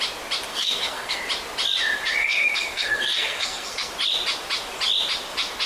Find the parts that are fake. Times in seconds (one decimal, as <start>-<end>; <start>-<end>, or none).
0.5-1.2; 2.2-3.9